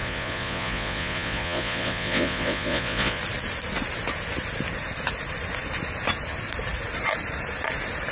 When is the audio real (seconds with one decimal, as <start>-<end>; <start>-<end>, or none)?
3.2-8.1